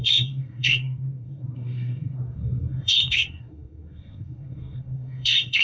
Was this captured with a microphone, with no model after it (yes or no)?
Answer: no